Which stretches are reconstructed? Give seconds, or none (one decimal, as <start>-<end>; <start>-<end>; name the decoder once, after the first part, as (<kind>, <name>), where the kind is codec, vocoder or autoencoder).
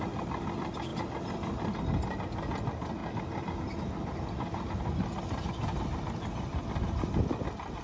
none